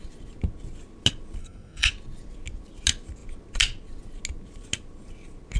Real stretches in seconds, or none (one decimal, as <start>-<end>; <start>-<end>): 0.0-1.4; 1.9-5.6